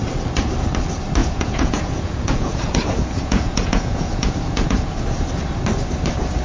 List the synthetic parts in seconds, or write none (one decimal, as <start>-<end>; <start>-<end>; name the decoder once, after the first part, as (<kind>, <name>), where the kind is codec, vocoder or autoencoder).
1.2-5.0 (vocoder, Vocos)